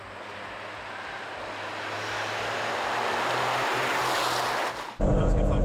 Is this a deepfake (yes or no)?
no